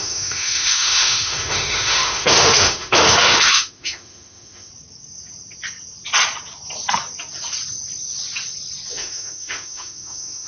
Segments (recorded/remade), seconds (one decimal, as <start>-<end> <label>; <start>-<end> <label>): 0.0-4.7 remade; 4.7-8.9 recorded; 8.9-10.5 remade